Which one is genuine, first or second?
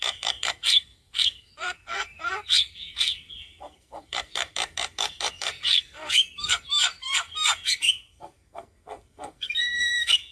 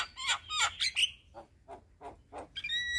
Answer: second